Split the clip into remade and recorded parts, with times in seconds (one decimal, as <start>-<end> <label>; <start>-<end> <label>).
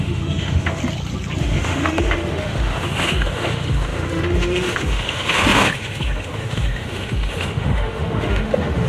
0.0-0.8 remade; 0.8-1.4 recorded; 1.4-8.9 remade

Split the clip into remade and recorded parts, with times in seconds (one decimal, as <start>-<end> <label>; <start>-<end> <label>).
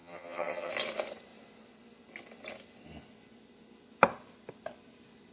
0.0-0.7 remade; 0.7-5.3 recorded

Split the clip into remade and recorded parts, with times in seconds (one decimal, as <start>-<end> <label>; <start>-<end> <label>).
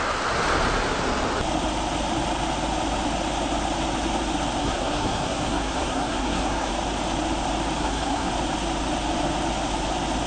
0.0-4.6 recorded; 4.6-6.7 remade; 6.7-7.8 recorded; 7.8-8.3 remade; 8.3-10.3 recorded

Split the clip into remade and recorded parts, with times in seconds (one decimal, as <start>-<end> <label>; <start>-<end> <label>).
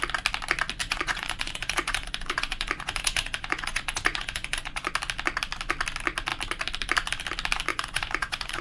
0.0-0.8 recorded; 0.8-4.9 remade; 4.9-7.7 recorded; 7.7-8.6 remade